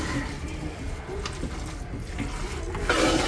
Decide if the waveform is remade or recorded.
recorded